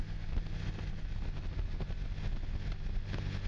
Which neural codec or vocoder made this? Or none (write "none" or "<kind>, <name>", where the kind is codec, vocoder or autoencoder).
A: none